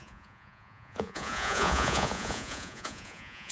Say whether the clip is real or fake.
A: fake